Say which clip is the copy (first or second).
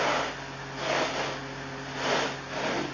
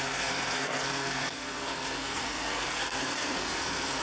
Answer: second